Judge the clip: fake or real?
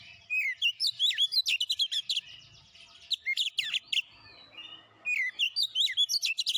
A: real